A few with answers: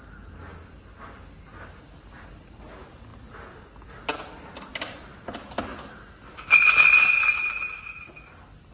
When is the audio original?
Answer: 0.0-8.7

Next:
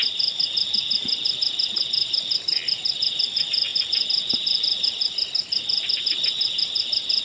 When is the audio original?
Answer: 0.0-7.2

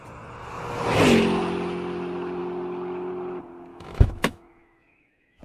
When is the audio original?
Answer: 0.0-3.7

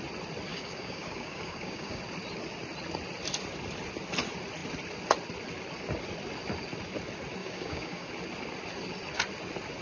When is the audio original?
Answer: 0.0-0.5; 2.0-7.4; 8.1-9.8

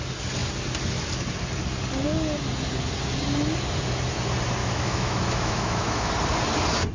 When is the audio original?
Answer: 0.0-4.6; 6.1-6.9

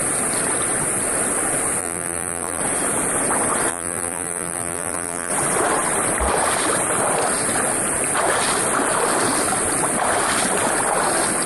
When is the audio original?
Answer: 0.0-1.8; 2.6-3.7; 5.3-11.5

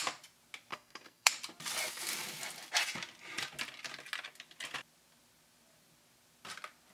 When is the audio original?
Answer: 0.0-0.7; 1.3-6.9

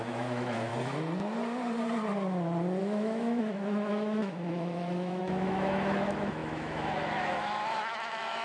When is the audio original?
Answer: 0.7-2.8